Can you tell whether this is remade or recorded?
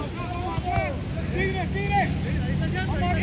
recorded